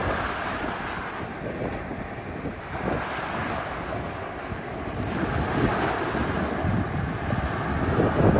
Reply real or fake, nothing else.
real